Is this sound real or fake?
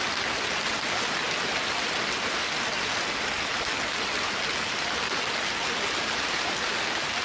real